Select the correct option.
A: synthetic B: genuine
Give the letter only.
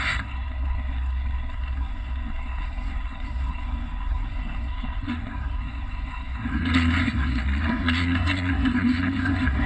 A